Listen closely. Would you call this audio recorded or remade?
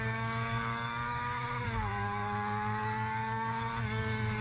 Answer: remade